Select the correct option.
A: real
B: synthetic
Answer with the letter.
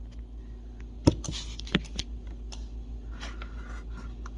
A